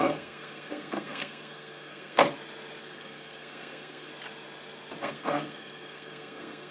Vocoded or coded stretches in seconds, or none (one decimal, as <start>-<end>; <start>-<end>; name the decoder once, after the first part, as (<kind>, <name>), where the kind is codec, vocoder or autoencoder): 0.0-2.2 (codec, SNAC); 2.8-4.1; 5.0-6.7